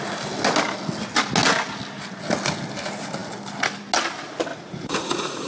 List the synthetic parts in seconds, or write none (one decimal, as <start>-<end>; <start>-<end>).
4.5-5.5